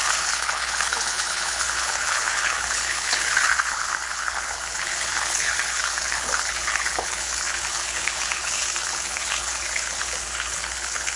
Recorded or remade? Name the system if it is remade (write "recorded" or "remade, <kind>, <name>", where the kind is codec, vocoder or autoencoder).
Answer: remade, codec, HILCodec